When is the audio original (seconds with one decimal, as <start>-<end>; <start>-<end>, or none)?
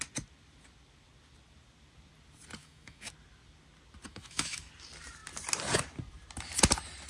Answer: 0.0-2.6; 3.1-4.1; 4.7-7.1